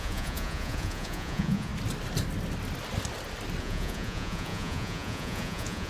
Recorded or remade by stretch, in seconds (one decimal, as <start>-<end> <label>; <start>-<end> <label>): 0.0-1.7 remade; 1.7-3.6 recorded; 3.6-5.9 remade